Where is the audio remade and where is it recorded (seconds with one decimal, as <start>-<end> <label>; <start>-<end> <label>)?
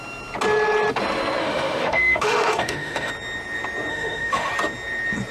0.0-1.4 recorded; 1.4-3.1 remade; 3.1-3.9 recorded; 3.9-4.5 remade; 4.5-5.3 recorded